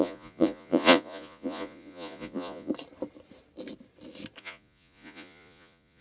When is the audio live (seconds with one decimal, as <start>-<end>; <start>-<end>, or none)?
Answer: 2.7-4.4